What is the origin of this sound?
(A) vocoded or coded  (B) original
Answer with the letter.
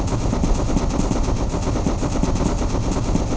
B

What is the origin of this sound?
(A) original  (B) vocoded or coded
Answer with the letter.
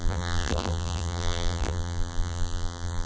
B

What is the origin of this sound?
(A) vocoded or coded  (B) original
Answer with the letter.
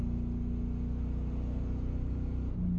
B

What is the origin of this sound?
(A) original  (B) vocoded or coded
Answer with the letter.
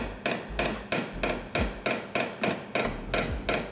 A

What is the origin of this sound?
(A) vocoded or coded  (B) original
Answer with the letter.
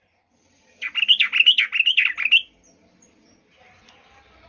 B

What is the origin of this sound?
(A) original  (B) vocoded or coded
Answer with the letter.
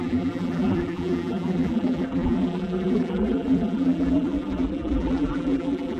B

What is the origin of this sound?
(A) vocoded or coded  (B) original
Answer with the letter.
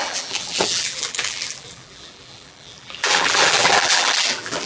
A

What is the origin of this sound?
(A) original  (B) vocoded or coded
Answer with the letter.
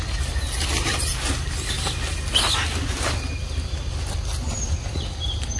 A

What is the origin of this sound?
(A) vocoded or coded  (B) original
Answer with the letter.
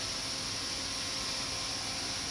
B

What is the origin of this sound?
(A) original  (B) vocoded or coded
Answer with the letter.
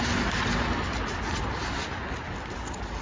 A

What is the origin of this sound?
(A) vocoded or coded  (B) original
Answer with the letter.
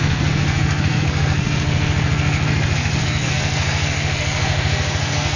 A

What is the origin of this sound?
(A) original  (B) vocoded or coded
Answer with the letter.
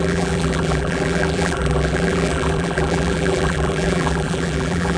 B